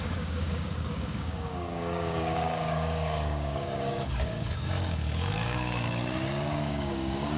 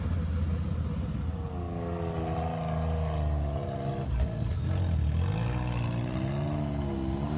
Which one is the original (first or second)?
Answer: second